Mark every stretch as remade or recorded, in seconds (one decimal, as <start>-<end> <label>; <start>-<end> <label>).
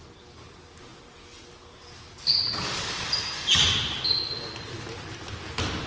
0.0-5.9 recorded